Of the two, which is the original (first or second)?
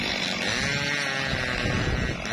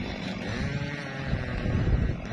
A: first